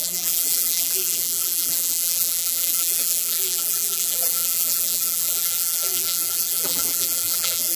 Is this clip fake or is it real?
fake